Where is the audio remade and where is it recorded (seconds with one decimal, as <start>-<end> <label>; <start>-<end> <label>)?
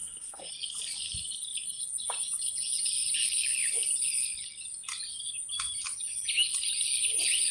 0.0-0.5 remade; 0.5-7.5 recorded